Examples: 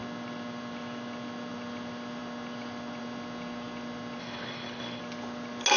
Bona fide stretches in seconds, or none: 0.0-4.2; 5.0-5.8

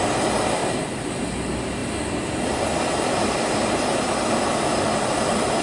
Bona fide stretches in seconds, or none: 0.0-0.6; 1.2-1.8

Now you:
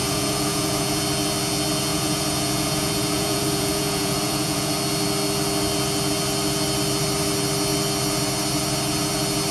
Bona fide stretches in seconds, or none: 1.0-1.9; 4.7-9.5